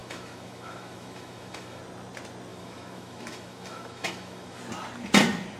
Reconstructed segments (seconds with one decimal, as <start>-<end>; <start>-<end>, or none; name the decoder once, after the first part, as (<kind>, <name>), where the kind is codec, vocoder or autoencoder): 0.0-1.8 (autoencoder, DAC-VAE); 2.5-4.6